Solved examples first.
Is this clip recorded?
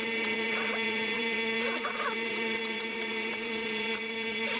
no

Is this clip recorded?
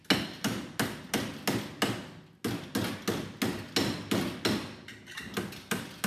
yes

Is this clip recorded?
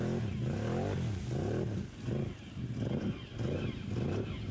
yes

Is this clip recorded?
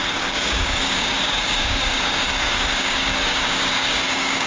no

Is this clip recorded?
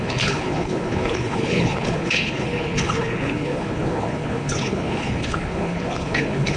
no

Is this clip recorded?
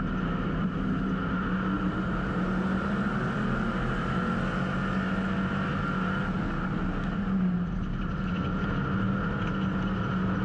yes